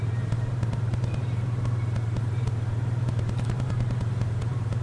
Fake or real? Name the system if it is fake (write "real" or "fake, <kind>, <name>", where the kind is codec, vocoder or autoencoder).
fake, vocoder, BigVGAN v2